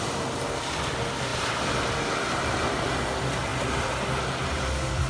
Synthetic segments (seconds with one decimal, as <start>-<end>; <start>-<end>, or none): 1.3-2.9